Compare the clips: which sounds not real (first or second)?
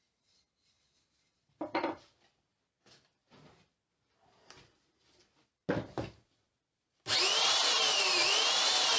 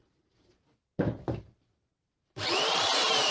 second